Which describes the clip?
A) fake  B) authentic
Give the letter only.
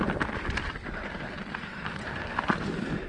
A